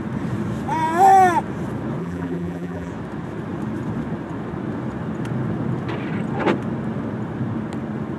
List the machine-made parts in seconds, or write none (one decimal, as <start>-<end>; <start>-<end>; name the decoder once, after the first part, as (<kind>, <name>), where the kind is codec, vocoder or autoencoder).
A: 2.0-2.9 (vocoder, BigVGAN v2)